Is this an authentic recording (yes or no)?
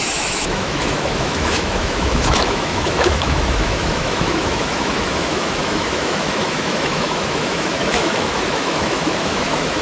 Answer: no